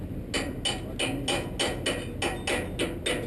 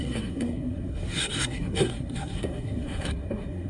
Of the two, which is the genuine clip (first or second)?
first